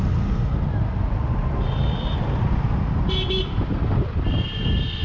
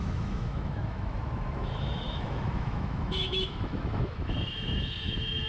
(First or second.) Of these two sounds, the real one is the first